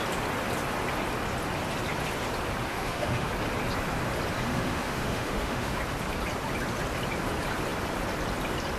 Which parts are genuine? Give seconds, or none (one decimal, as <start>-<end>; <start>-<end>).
0.0-2.7; 3.3-4.5; 5.8-8.8